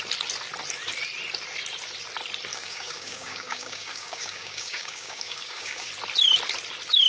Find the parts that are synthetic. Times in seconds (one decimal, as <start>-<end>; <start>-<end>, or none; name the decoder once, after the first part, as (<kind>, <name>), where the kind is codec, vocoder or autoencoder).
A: 2.5-5.9 (codec, DAC)